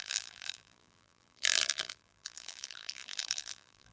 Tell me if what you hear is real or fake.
fake